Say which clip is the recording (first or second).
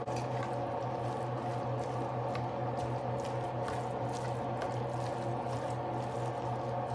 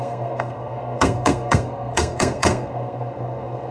first